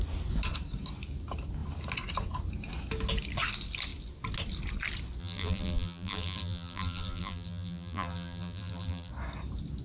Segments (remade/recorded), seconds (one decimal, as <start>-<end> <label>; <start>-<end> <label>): 0.0-5.2 recorded; 5.2-9.1 remade; 9.1-9.8 recorded